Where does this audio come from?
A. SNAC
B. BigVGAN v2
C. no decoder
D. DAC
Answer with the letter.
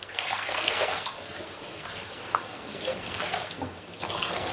A